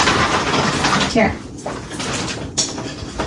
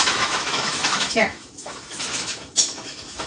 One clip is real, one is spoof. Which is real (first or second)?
first